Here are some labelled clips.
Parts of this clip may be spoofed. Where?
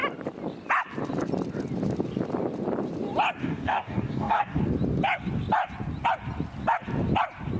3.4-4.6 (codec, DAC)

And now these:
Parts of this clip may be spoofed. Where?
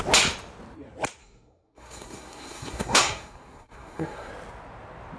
1.2-4.3 (codec, SNAC)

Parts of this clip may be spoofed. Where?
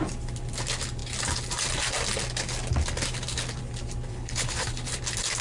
4.1-4.9 (codec, HILCodec)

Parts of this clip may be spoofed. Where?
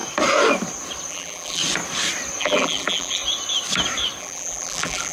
1.1-1.6 (vocoder, BigVGAN v2); 2.4-3.2; 4.2-5.1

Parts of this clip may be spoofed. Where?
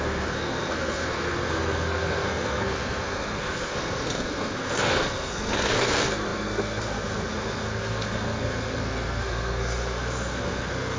0.0-11.0 (codec, SNAC)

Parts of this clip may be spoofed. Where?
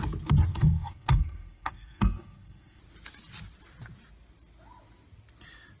0.5-2.8 (codec, SNAC)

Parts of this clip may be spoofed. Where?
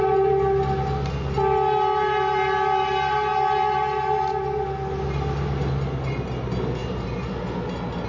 6.8-7.3 (vocoder, BigVGAN v2)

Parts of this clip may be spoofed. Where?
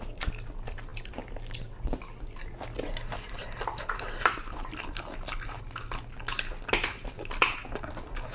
none